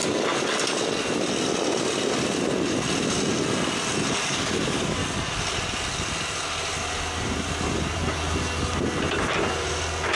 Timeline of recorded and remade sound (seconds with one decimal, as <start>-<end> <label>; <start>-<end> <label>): 0.0-4.1 recorded; 4.1-5.0 remade; 5.0-10.2 recorded